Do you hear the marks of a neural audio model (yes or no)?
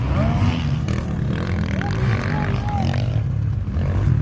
no